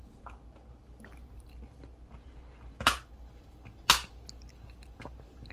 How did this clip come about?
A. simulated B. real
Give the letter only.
B